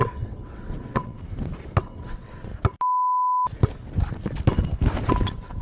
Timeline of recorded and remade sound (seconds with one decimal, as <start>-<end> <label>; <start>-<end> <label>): 0.0-1.2 remade; 1.2-1.8 recorded; 1.8-2.5 remade; 2.5-5.1 recorded; 5.1-5.6 remade